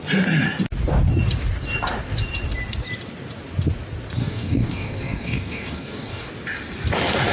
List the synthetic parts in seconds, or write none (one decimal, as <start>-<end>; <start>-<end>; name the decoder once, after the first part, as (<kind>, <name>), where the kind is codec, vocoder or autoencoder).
4.2-6.3 (codec, DAC)